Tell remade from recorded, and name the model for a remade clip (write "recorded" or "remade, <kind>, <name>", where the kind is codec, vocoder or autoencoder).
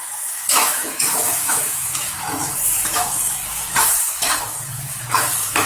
remade, autoencoder, DAC-VAE